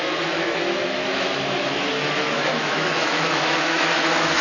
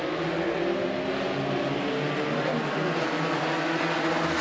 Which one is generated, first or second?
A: first